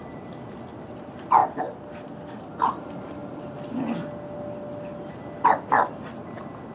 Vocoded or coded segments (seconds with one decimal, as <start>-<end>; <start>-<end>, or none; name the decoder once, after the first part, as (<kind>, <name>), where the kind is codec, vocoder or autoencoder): 0.0-1.4 (vocoder, BigVGAN v2); 2.7-3.2; 6.2-6.7